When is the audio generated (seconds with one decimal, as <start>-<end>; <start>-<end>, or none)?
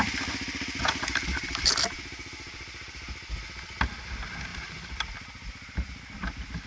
none